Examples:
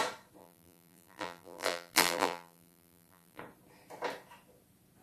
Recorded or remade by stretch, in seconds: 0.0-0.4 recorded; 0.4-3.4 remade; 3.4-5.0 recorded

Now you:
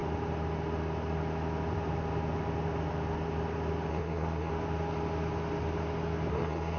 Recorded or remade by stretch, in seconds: 0.0-3.9 recorded; 3.9-4.5 remade; 4.5-6.3 recorded; 6.3-6.8 remade

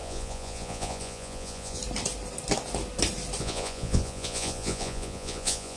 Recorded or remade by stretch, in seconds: 0.0-1.8 remade; 1.8-3.4 recorded; 3.4-5.8 remade

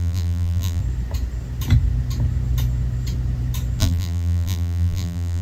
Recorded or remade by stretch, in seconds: 0.0-0.8 remade; 0.8-3.8 recorded; 3.8-5.4 remade